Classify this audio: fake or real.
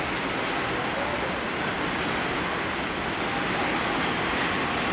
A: real